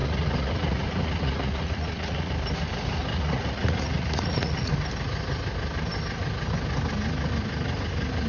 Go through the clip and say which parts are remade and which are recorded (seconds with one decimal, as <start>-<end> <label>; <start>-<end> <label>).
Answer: 0.0-2.3 remade; 2.3-3.1 recorded; 3.1-4.7 remade; 4.7-8.3 recorded